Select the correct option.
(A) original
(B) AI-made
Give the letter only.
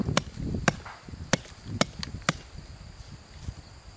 A